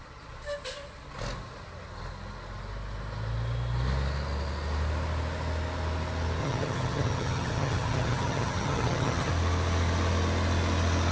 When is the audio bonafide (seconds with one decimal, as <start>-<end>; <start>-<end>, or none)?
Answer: 0.0-6.4; 9.3-11.1